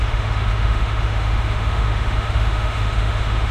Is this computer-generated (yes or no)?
yes